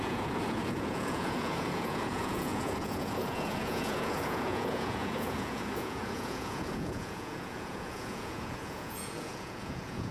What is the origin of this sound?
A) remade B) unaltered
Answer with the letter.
A